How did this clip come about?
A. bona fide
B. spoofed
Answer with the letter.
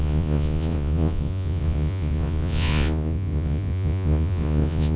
B